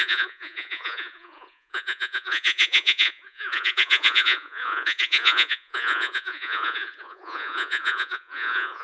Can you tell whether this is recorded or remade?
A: remade